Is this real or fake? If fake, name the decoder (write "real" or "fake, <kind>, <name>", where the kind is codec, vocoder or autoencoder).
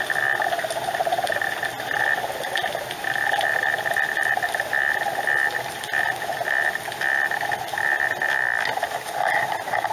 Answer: real